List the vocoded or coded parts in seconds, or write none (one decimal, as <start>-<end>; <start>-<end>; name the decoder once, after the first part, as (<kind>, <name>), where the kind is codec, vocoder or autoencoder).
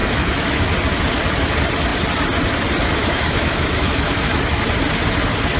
0.0-0.7 (autoencoder, DAC-VAE); 3.0-4.3